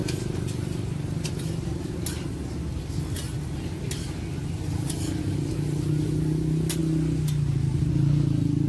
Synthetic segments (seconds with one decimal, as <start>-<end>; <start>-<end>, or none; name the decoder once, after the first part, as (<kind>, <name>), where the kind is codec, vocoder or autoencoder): none